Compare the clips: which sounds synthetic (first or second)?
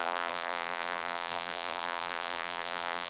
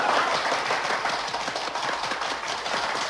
first